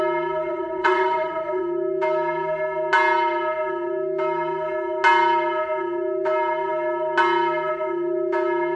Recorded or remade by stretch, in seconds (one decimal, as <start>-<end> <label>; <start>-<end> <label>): 0.0-0.5 recorded; 0.5-1.6 remade; 1.6-8.8 recorded